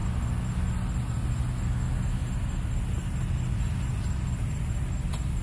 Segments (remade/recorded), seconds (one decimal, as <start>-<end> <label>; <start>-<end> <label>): 0.0-5.4 recorded